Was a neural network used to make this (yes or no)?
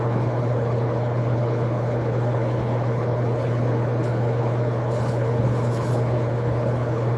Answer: yes